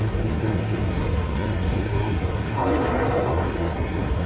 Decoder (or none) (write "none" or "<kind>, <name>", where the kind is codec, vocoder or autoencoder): codec, SNAC